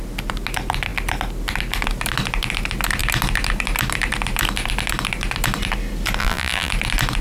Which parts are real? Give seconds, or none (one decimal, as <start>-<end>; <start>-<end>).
0.0-6.2; 6.7-7.2